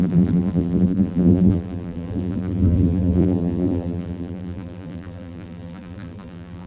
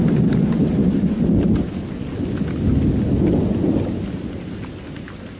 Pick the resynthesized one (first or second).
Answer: first